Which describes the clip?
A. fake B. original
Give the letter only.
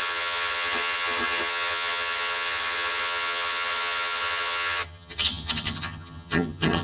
A